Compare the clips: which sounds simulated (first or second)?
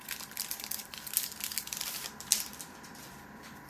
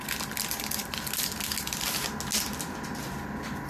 first